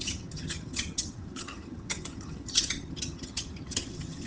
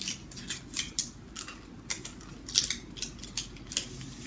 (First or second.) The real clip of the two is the second